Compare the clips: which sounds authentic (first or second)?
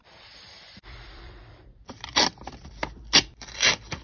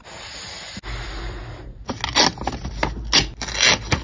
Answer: second